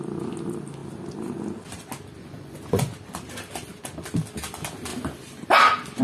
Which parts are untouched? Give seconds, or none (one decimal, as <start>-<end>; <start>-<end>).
0.0-2.2; 2.9-6.0